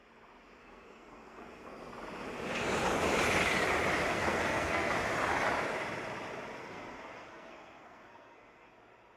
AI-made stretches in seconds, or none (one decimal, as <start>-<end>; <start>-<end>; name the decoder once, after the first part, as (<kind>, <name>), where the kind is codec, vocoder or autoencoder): 0.6-1.9 (codec, SNAC); 4.1-4.9; 6.6-8.7